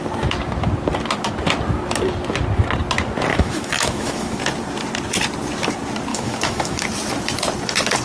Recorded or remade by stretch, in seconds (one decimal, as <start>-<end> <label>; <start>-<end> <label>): 0.0-3.3 recorded; 3.3-4.4 remade; 4.4-6.1 recorded; 6.1-6.8 remade; 6.8-8.0 recorded